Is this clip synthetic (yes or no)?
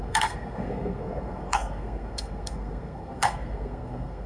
yes